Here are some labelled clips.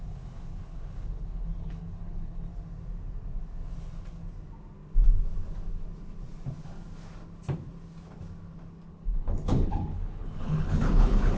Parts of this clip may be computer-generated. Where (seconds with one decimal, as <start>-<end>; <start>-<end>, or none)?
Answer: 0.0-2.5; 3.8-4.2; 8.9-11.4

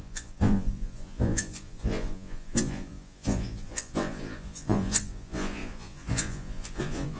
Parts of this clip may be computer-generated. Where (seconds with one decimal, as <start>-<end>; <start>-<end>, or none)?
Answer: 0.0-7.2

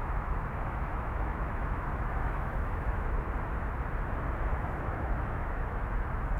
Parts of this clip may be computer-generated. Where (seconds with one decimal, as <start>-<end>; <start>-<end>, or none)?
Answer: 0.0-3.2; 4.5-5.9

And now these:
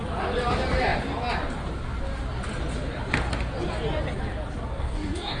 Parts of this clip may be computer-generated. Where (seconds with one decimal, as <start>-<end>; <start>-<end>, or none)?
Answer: 4.7-5.4

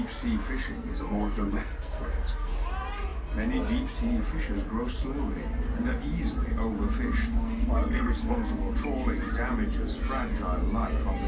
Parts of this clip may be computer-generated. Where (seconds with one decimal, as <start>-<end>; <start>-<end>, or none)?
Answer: 0.8-2.5; 7.3-8.7

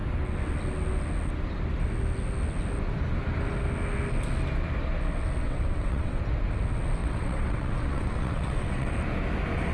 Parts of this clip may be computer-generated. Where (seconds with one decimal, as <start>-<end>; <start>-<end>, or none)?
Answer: 5.4-6.2; 7.0-8.9

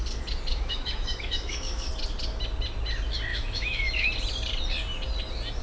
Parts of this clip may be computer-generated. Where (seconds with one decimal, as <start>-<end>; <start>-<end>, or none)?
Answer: 0.5-1.9; 3.3-4.1

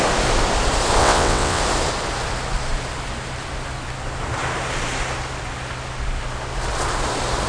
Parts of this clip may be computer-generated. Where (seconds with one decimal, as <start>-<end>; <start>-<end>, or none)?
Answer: 1.0-1.6